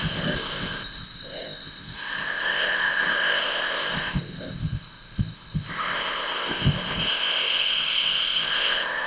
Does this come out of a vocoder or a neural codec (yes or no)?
yes